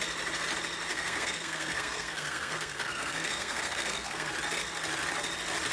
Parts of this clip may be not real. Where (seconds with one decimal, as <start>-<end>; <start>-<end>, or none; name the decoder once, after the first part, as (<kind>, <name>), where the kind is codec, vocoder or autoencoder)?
0.9-4.3 (codec, SNAC)